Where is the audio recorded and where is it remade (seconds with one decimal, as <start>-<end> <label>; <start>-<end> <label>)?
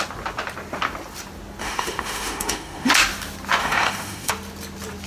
0.0-1.6 recorded; 1.6-2.9 remade; 2.9-3.6 recorded; 3.6-4.3 remade; 4.3-5.1 recorded